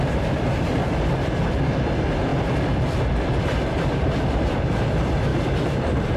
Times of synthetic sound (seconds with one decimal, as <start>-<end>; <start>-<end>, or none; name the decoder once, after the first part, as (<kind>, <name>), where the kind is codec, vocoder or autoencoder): 0.0-0.8 (vocoder, BigVGAN v2); 1.7-2.3; 3.4-6.2